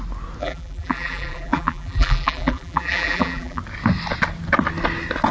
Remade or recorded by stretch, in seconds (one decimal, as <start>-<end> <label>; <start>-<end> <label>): 0.0-0.4 recorded; 0.4-3.6 remade; 3.6-5.3 recorded